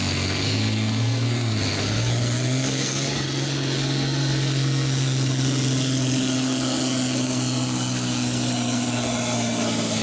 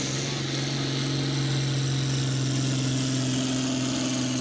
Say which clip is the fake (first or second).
first